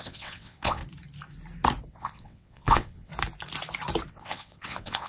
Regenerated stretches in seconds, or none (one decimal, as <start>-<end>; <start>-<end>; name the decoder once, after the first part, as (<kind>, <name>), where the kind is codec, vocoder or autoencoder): 0.0-0.8 (vocoder, WaveNeXt); 1.9-3.1; 4.1-5.1